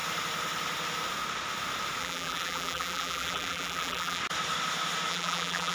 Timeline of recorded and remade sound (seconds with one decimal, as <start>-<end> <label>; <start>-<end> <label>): 0.0-2.0 recorded; 2.0-4.2 remade; 4.2-5.1 recorded; 5.1-5.7 remade

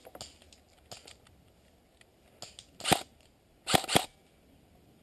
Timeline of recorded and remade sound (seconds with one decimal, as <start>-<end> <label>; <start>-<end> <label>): 0.0-5.0 recorded

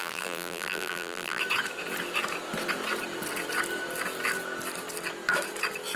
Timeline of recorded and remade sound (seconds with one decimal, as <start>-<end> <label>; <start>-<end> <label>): 0.0-1.4 remade; 1.4-6.0 recorded

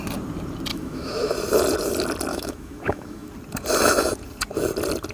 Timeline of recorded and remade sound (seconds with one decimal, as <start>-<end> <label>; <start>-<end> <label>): 0.0-0.7 recorded; 0.7-1.3 remade; 1.3-2.3 recorded; 2.3-3.3 remade; 3.3-5.1 recorded